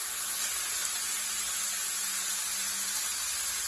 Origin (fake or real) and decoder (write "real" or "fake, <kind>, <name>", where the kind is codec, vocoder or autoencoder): real